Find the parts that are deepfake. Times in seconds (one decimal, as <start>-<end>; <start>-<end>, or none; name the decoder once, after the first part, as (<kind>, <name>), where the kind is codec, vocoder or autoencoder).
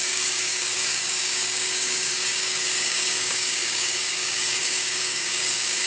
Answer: 0.0-5.9 (codec, DAC)